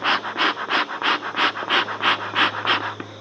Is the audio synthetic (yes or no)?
no